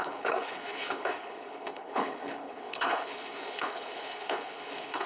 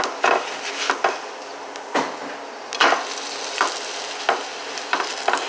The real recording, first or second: second